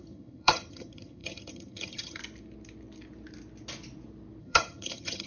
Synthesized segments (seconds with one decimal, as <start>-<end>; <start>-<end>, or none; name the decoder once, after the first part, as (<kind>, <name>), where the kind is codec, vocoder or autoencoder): 0.0-2.2 (vocoder, HiFi-GAN); 4.4-5.3